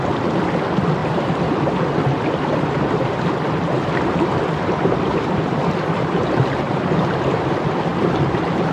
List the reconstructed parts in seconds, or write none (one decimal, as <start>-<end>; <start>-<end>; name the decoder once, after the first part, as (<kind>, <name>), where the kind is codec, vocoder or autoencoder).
1.0-1.5 (vocoder, BigVGAN v2); 4.3-7.4